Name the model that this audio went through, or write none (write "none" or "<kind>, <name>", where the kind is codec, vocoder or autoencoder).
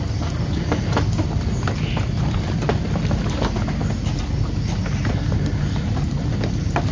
none